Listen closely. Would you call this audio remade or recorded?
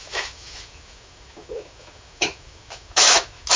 remade